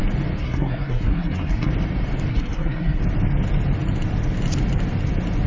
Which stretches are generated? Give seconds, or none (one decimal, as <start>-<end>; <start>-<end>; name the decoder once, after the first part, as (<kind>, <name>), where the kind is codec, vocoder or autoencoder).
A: 0.4-1.7 (codec, SNAC); 2.3-3.0

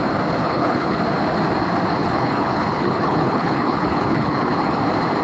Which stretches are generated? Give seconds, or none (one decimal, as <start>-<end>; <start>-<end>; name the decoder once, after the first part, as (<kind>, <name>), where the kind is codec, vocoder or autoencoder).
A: 0.4-1.0 (codec, HILCodec); 2.0-4.8